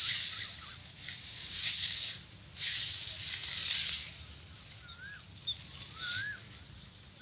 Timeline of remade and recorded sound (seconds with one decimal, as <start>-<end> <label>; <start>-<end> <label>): 0.0-0.8 recorded; 0.8-2.1 remade; 2.1-7.2 recorded